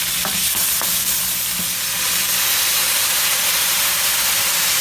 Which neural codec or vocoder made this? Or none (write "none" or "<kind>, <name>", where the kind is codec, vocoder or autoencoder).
none